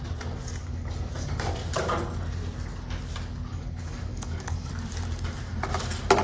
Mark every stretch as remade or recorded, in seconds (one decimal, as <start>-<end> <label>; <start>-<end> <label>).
0.0-0.6 recorded; 0.6-1.1 remade; 1.1-3.5 recorded; 3.5-4.7 remade; 4.7-6.2 recorded